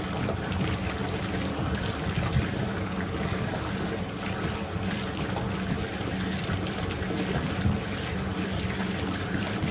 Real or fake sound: real